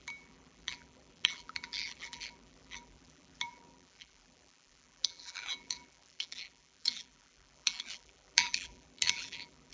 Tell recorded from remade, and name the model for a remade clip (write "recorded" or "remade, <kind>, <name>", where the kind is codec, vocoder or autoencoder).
remade, vocoder, BigVGAN v2